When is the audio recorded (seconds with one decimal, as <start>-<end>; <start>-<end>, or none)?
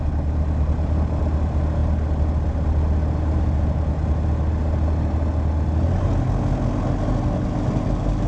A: 0.0-8.3